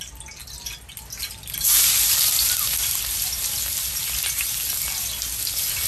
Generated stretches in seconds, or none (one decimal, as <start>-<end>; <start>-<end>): none